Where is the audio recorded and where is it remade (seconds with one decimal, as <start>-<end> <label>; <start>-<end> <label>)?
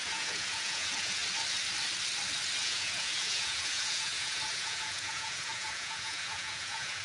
0.0-1.2 remade; 1.2-2.6 recorded; 2.6-7.0 remade